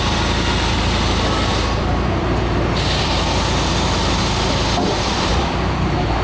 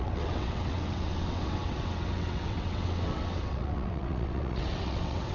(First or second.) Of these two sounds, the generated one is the second